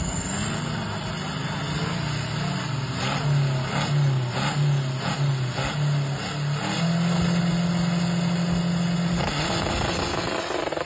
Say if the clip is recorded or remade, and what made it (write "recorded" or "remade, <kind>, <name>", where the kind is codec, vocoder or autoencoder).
recorded